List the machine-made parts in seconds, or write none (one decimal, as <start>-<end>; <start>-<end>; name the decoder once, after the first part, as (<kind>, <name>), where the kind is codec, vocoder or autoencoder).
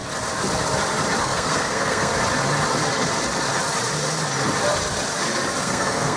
1.2-2.1 (codec, SNAC); 5.6-6.2